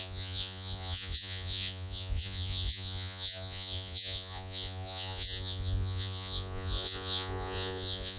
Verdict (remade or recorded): remade